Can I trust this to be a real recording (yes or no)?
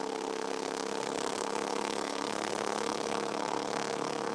no